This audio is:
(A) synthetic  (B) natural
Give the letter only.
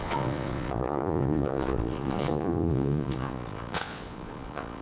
A